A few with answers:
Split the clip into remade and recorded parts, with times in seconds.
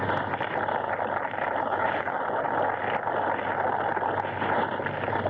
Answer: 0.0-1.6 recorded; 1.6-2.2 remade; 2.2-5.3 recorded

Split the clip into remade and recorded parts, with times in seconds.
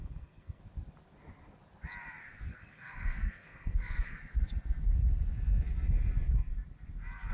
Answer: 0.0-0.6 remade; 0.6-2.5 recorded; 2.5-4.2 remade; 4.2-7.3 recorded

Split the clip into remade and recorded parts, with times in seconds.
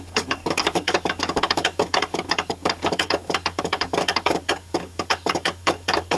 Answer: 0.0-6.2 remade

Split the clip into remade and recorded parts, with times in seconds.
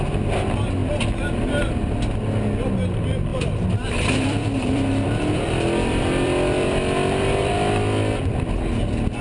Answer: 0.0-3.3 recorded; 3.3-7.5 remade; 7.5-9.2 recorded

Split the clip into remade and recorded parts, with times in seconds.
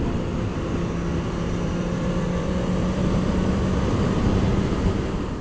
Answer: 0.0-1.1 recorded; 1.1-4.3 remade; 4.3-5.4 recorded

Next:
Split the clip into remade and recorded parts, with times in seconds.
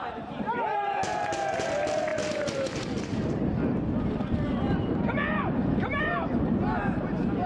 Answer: 0.0-2.1 remade; 2.1-4.4 recorded; 4.4-5.6 remade; 5.6-6.1 recorded; 6.1-7.5 remade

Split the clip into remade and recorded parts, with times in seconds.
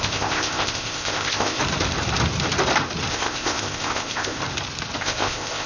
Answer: 0.0-1.6 remade; 1.6-3.1 recorded; 3.1-4.4 remade; 4.4-5.0 recorded; 5.0-5.7 remade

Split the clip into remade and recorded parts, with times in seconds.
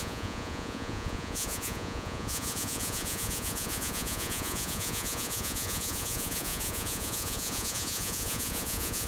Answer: 0.0-9.1 remade